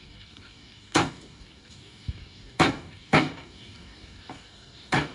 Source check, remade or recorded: remade